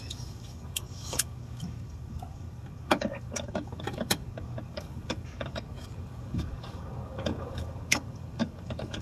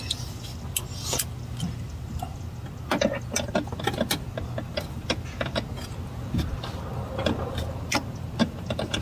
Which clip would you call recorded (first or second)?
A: second